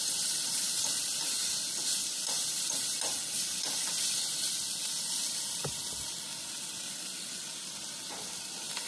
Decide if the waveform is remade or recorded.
recorded